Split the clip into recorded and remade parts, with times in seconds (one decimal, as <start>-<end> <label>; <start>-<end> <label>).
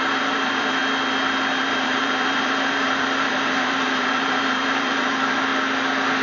0.0-0.8 remade; 0.8-1.6 recorded; 1.6-5.5 remade; 5.5-6.2 recorded